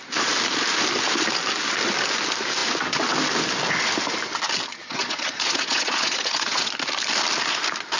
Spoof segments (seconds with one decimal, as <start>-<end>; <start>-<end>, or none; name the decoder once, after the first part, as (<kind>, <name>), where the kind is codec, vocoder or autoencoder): 4.7-6.7 (vocoder, Vocos)